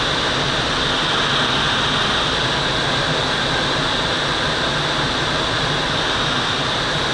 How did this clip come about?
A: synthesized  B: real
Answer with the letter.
B